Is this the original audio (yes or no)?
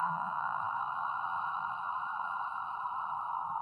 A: no